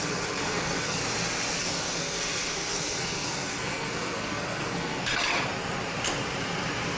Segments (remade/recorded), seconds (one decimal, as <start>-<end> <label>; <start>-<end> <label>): 0.0-1.0 remade; 1.0-1.6 recorded; 1.6-5.1 remade; 5.1-7.0 recorded